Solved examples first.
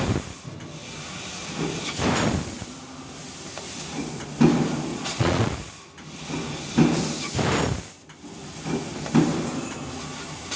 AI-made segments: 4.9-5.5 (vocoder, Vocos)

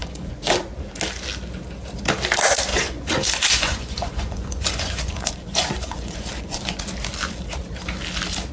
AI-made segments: 0.0-0.6 (vocoder, Vocos); 2.7-6.8

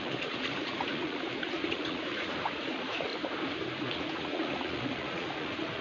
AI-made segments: 0.0-3.1 (vocoder, Vocos); 3.8-5.8

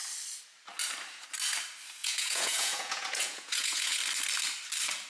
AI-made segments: 2.0-4.0 (vocoder, Vocos)